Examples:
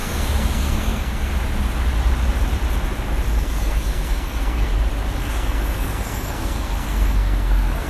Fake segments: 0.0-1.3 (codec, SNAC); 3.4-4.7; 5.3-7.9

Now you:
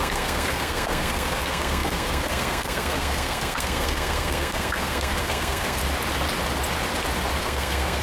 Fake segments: 0.0-5.8 (codec, SNAC); 7.4-8.0